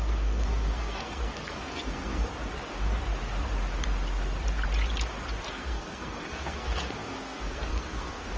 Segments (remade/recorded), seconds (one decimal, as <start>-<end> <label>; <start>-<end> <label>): 0.0-2.3 remade; 2.3-5.5 recorded; 5.5-8.4 remade